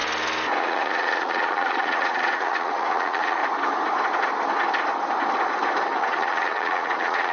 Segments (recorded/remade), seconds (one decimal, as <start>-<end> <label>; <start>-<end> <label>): 0.0-0.6 recorded; 0.6-3.4 remade; 3.4-6.0 recorded; 6.0-7.3 remade